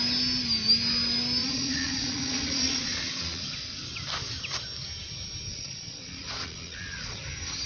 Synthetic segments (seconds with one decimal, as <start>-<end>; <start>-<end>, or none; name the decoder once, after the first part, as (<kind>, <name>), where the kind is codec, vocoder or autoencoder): 1.4-3.8 (vocoder, Vocos); 5.5-7.2